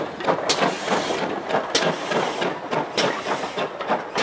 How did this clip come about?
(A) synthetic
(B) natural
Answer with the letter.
B